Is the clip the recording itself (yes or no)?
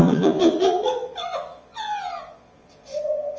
no